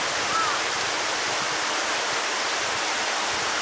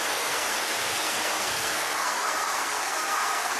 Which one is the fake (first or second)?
second